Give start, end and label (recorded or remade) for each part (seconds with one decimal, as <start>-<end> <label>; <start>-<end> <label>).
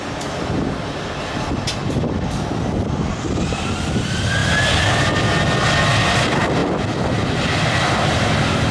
0.0-8.7 recorded